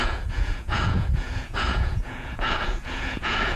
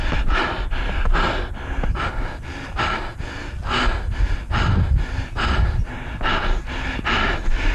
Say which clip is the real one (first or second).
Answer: second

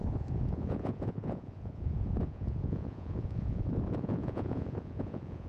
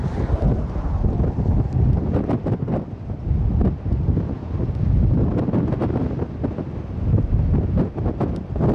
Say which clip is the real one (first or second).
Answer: second